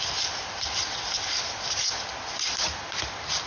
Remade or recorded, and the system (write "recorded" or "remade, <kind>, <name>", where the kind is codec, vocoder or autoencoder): recorded